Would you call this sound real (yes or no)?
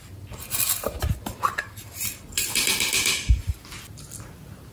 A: yes